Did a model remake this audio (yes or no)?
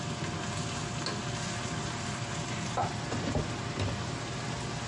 no